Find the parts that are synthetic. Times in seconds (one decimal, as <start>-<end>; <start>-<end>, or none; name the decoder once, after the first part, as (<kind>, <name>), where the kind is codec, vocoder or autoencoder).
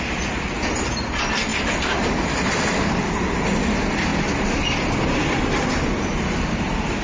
none